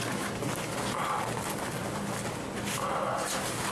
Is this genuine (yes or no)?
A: yes